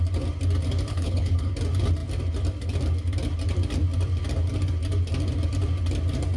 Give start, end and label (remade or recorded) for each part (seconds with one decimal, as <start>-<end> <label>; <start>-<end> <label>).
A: 0.0-0.9 recorded; 0.9-1.5 remade; 1.5-6.4 recorded